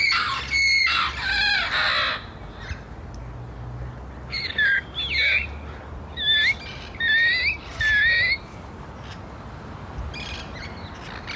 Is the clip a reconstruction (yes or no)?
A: no